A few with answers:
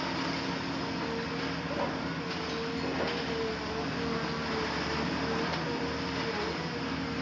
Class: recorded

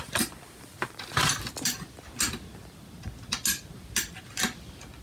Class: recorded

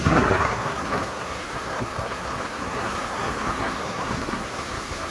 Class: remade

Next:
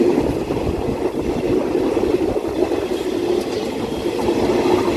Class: recorded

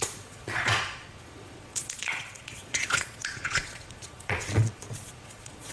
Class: remade